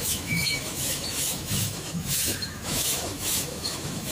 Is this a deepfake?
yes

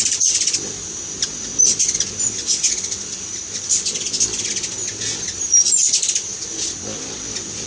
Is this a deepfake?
no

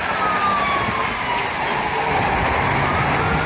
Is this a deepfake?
no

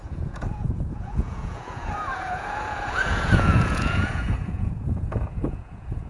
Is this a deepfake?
yes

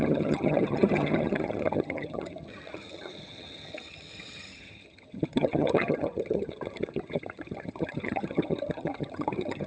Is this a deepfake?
yes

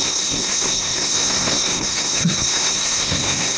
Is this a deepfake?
yes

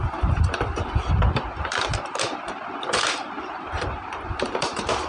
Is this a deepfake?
yes